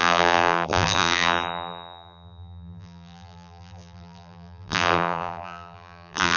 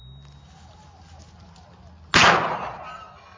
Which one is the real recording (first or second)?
second